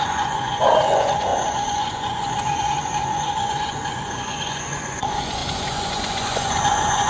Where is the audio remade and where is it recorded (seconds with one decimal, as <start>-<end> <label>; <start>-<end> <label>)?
0.0-7.1 remade

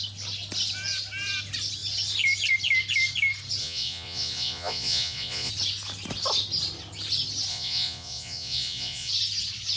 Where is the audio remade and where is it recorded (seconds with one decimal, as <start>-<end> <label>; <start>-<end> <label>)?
0.0-3.6 recorded; 3.6-5.5 remade; 5.5-7.5 recorded; 7.5-9.1 remade; 9.1-9.8 recorded

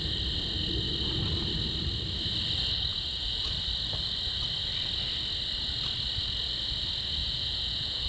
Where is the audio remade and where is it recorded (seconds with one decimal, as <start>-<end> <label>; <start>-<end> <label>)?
0.0-2.9 recorded; 2.9-3.5 remade; 3.5-7.2 recorded; 7.2-8.1 remade

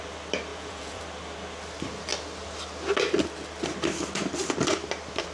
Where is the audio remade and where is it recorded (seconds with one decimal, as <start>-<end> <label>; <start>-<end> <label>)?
0.0-0.5 recorded; 0.5-1.0 remade; 1.0-5.3 recorded

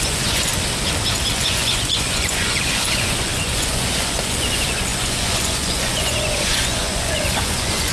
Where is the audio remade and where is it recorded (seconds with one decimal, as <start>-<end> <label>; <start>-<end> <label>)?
0.0-0.5 remade; 0.5-1.3 recorded; 1.3-7.9 remade

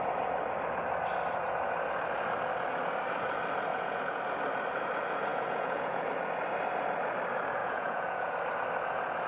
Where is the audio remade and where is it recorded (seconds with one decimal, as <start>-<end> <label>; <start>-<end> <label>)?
0.0-3.7 recorded; 3.7-4.2 remade; 4.2-5.3 recorded; 5.3-6.1 remade; 6.1-7.6 recorded; 7.6-8.3 remade; 8.3-9.3 recorded

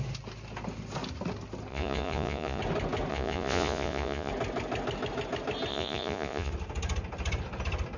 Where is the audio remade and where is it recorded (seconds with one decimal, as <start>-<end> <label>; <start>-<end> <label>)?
0.0-1.7 recorded; 1.7-2.6 remade; 2.6-3.1 recorded; 3.1-4.3 remade; 4.3-5.7 recorded; 5.7-6.5 remade; 6.5-8.0 recorded